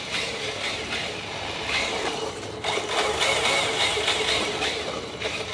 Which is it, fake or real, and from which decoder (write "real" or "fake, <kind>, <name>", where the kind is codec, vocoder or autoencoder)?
fake, vocoder, BigVGAN v2